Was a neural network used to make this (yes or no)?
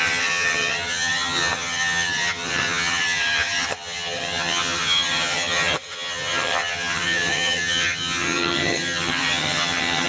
yes